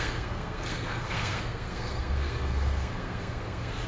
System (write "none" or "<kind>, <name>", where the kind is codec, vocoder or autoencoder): codec, SNAC